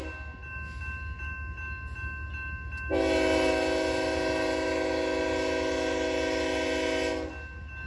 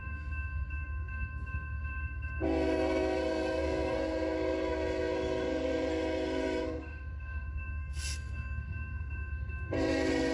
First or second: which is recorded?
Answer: first